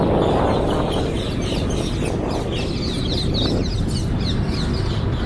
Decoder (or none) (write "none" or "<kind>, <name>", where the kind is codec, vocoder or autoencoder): none